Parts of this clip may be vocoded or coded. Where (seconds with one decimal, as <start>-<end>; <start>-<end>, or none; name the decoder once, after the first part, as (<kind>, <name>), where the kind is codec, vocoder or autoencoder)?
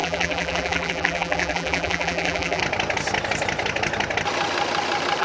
0.0-2.6 (vocoder, BigVGAN v2)